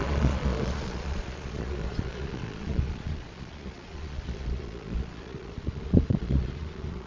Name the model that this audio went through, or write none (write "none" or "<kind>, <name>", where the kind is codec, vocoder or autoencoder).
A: vocoder, Vocos